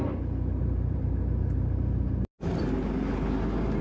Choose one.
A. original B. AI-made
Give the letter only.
A